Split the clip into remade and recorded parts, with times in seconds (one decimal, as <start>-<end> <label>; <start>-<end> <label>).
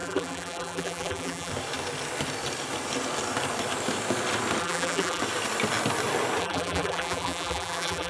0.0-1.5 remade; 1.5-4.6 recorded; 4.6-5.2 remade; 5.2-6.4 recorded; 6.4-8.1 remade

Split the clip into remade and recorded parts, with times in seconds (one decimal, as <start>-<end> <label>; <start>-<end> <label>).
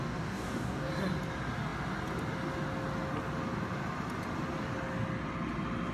0.0-0.9 remade; 0.9-5.9 recorded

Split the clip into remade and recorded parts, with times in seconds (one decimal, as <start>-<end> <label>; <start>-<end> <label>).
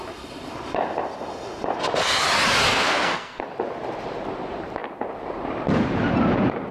0.0-2.7 recorded; 2.7-3.4 remade; 3.4-6.7 recorded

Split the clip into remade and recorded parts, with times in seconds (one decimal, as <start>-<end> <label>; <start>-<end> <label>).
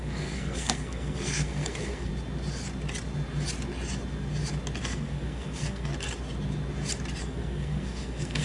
0.0-2.1 remade; 2.1-4.8 recorded; 4.8-5.9 remade; 5.9-7.2 recorded; 7.2-8.4 remade